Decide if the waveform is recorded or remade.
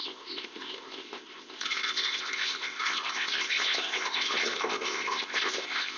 remade